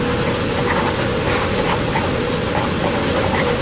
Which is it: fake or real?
real